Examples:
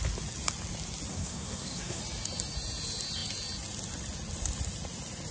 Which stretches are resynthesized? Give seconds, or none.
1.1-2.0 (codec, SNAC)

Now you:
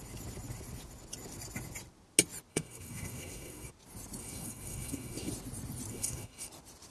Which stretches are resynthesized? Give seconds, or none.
2.5-3.7 (codec, SNAC); 4.2-5.3; 5.9-6.5

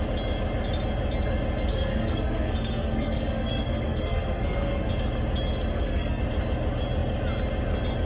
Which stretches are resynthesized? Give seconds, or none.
1.7-4.9 (codec, SNAC); 5.7-6.2

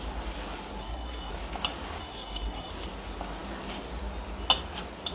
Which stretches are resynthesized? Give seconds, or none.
0.8-1.3 (codec, SNAC); 2.0-2.7